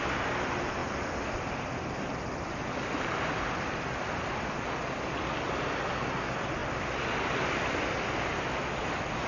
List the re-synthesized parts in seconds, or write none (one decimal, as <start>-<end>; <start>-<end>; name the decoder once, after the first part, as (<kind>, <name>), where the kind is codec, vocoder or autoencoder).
none